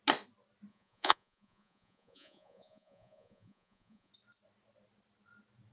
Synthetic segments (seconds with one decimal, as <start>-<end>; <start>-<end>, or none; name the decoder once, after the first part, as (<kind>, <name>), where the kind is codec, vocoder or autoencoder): 0.7-4.1 (vocoder, Vocos)